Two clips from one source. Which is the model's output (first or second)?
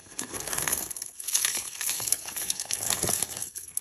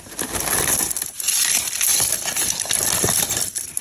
first